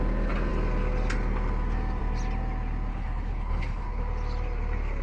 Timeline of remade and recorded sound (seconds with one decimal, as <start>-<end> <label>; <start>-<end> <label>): 0.0-2.9 recorded; 2.9-4.0 remade; 4.0-5.0 recorded